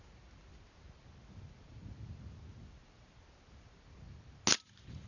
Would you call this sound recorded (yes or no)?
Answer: yes